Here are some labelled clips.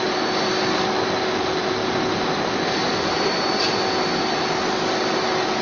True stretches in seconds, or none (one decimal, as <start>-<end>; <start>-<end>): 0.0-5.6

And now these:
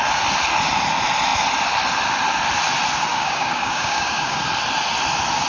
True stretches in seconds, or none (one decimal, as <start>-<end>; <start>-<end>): 0.0-3.1; 4.4-5.5

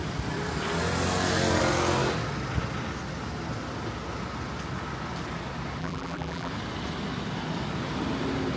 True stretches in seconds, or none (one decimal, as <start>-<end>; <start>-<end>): 0.0-5.8; 6.5-8.6

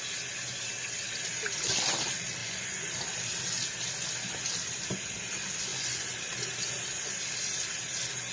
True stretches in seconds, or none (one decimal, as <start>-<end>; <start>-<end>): 0.0-2.4; 2.9-5.7; 6.2-8.3

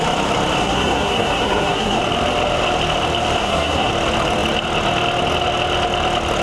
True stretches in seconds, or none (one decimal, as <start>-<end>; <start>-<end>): 0.0-0.6; 2.0-3.4; 3.9-6.4

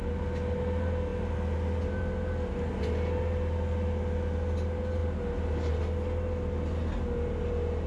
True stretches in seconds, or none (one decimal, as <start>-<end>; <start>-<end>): 0.0-7.9